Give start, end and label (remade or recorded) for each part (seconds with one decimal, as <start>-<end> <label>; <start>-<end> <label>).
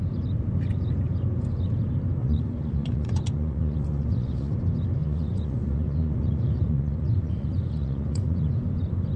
0.0-2.2 recorded; 2.2-4.6 remade; 4.6-5.0 recorded; 5.0-8.5 remade; 8.5-9.2 recorded